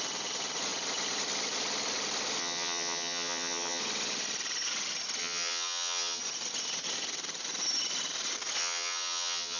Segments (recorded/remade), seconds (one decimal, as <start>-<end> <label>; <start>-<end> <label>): 0.0-2.4 recorded; 2.4-3.8 remade; 3.8-5.2 recorded; 5.2-6.2 remade; 6.2-8.6 recorded; 8.6-9.6 remade